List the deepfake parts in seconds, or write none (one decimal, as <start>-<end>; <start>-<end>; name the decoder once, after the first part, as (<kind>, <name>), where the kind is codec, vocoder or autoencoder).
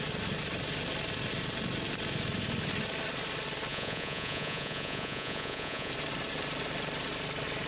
3.7-5.9 (vocoder, Vocos)